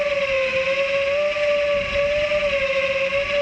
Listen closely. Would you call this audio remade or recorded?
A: recorded